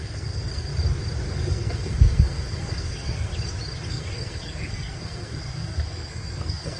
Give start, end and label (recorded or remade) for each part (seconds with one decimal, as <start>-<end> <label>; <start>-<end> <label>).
0.0-0.7 remade; 0.7-1.3 recorded; 1.3-3.3 remade; 3.3-3.9 recorded; 3.9-6.8 remade